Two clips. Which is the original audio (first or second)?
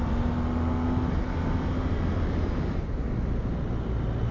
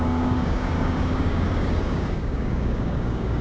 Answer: first